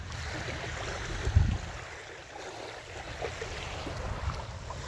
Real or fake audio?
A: real